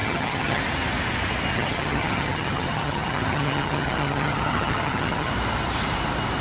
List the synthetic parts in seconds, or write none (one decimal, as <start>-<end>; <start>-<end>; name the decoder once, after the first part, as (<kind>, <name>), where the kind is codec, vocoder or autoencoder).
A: 0.0-0.6 (vocoder, HiFi-GAN); 1.5-5.3